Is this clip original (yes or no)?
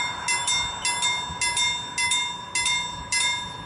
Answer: yes